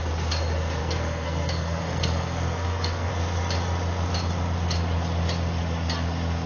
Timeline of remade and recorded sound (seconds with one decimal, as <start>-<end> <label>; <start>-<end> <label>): 0.0-0.8 recorded; 0.8-3.1 remade; 3.1-6.5 recorded